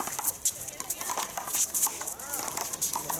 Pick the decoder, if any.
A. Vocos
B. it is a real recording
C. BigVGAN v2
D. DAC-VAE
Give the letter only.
B